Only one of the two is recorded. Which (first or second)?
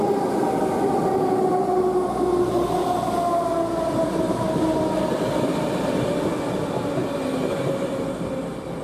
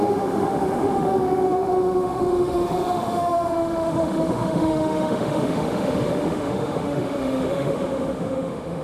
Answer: first